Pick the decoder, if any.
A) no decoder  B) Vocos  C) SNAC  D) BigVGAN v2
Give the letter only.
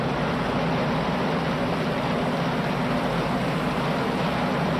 A